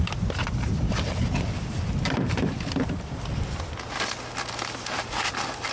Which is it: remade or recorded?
remade